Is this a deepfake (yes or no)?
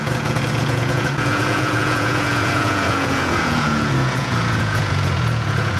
yes